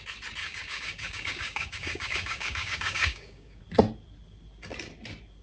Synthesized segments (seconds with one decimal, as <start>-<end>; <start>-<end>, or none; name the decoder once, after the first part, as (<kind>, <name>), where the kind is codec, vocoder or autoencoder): 0.4-3.6 (codec, DAC)